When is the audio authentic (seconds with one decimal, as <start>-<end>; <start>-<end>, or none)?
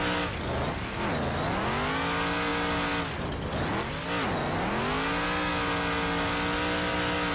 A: 0.0-7.3